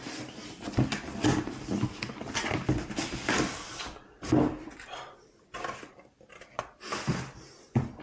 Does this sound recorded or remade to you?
recorded